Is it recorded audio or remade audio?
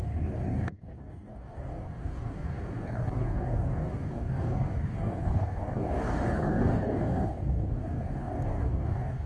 remade